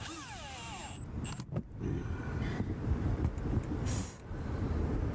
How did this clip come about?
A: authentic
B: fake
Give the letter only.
A